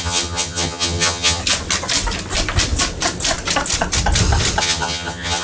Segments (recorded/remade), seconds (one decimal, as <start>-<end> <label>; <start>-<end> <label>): 0.0-1.4 remade; 1.4-4.6 recorded; 4.6-5.4 remade